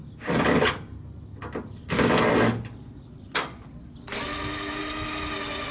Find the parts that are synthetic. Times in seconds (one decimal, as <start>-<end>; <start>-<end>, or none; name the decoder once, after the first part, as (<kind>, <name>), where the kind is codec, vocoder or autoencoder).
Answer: none